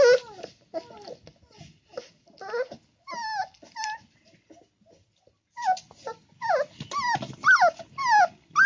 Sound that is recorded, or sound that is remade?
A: recorded